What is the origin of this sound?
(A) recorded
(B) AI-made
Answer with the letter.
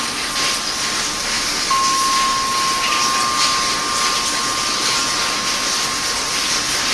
A